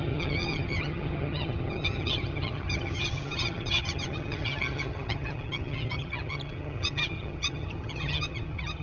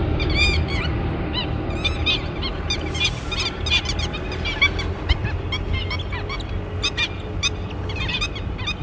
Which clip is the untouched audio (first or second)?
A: second